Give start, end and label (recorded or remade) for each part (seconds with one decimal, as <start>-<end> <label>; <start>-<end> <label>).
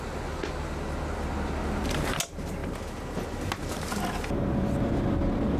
0.0-5.6 recorded